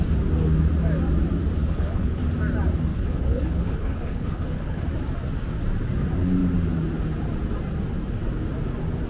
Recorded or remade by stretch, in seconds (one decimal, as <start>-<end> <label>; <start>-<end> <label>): 0.0-1.6 recorded; 1.6-2.2 remade; 2.2-2.9 recorded; 2.9-4.8 remade; 4.8-9.1 recorded